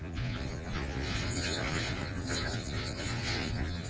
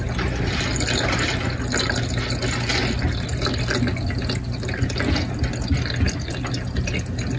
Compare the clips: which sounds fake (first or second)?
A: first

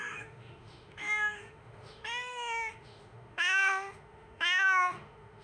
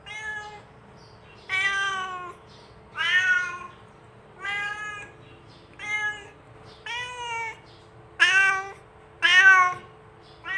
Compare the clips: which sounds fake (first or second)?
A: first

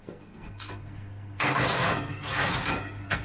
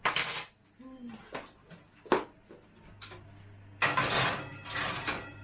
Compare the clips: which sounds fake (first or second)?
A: first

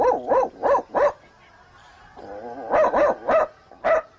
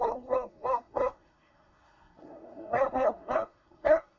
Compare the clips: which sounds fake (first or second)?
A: second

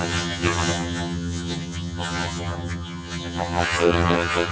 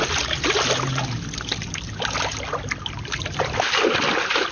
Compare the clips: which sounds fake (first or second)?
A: first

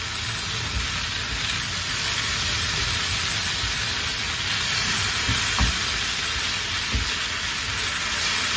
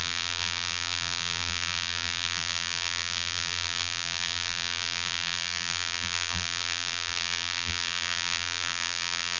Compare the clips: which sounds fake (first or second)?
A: second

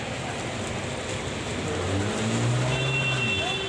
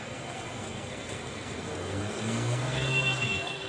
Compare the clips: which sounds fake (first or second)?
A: second